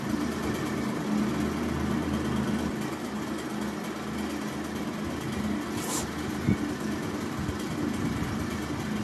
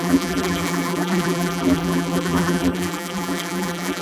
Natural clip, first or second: first